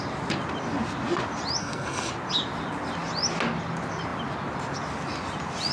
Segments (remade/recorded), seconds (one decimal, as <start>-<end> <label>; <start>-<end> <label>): 0.0-1.6 recorded; 1.6-2.1 remade; 2.1-5.7 recorded